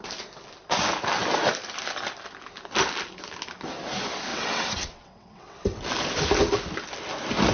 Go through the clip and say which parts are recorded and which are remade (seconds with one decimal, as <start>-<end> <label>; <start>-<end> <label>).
0.0-4.3 recorded; 4.3-5.8 remade; 5.8-7.5 recorded

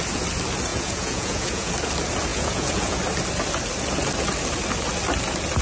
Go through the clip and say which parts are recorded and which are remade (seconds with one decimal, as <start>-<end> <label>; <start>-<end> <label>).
0.0-0.7 recorded; 0.7-1.7 remade; 1.7-2.3 recorded; 2.3-3.0 remade; 3.0-5.6 recorded

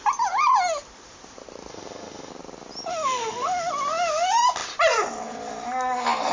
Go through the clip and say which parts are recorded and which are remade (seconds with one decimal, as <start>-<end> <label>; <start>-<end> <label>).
0.0-1.7 recorded; 1.7-2.3 remade; 2.3-2.9 recorded; 2.9-3.7 remade; 3.7-6.3 recorded

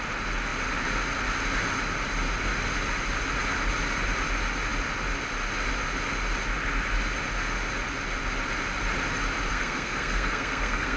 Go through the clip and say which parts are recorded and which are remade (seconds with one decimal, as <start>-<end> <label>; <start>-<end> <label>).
0.0-9.5 recorded; 9.5-11.0 remade

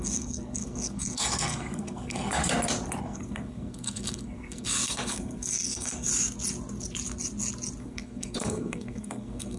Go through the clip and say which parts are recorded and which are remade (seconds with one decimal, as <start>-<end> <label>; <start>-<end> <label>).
0.0-2.4 remade; 2.4-3.0 recorded; 3.0-6.1 remade; 6.1-7.8 recorded; 7.8-9.6 remade

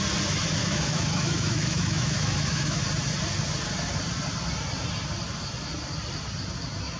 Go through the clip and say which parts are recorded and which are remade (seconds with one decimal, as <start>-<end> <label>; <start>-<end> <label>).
0.0-0.6 recorded; 0.6-2.8 remade; 2.8-7.0 recorded